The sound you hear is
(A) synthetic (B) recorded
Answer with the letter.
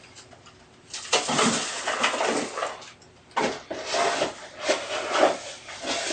B